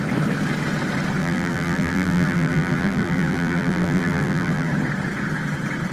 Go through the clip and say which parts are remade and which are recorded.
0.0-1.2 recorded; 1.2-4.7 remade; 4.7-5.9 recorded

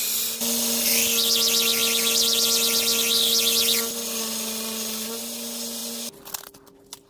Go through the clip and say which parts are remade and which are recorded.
0.0-7.1 recorded

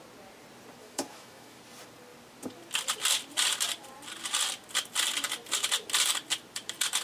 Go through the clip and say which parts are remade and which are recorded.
0.0-0.8 recorded; 0.8-1.6 remade; 1.6-7.0 recorded

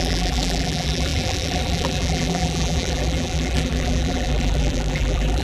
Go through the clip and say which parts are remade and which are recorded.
0.0-5.4 remade

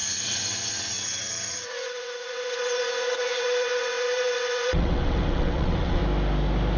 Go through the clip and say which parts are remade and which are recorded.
0.0-6.0 remade; 6.0-6.8 recorded

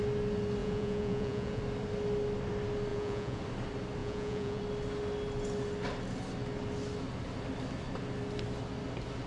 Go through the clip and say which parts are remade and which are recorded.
0.0-0.6 recorded; 0.6-1.6 remade; 1.6-2.9 recorded; 2.9-3.4 remade; 3.4-4.0 recorded; 4.0-4.6 remade; 4.6-9.3 recorded

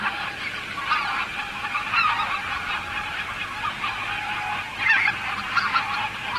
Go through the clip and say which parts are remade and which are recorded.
0.0-6.4 recorded

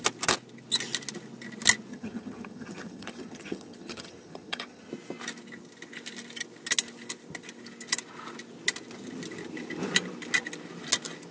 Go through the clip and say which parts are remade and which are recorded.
0.0-1.9 recorded; 1.9-4.9 remade; 4.9-11.3 recorded